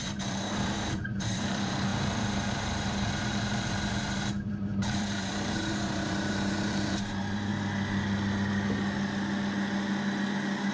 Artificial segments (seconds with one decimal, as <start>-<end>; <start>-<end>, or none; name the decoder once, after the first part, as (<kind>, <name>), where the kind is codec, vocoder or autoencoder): 0.0-7.5 (vocoder, BigVGAN v2)